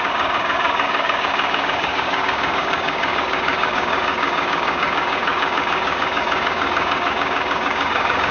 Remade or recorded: remade